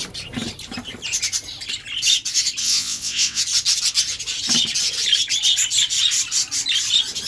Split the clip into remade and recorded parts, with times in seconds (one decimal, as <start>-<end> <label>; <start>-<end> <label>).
0.0-2.6 recorded; 2.6-3.4 remade; 3.4-7.3 recorded